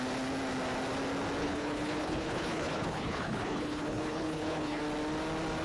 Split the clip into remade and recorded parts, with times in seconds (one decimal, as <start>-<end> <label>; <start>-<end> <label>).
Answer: 0.0-1.4 recorded; 1.4-4.8 remade; 4.8-5.6 recorded